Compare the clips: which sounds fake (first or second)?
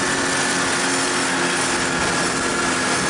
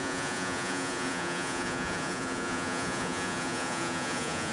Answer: second